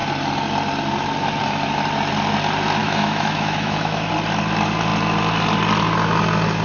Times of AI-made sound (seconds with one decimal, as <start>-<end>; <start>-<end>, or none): 2.8-4.1